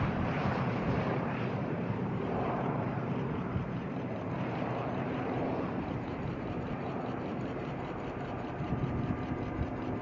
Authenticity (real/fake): fake